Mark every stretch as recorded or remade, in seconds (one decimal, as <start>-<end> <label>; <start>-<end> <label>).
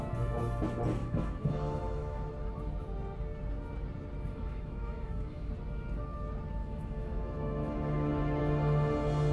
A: 0.0-1.0 recorded; 1.0-2.3 remade; 2.3-4.3 recorded; 4.3-5.5 remade; 5.5-6.6 recorded; 6.6-8.4 remade; 8.4-9.3 recorded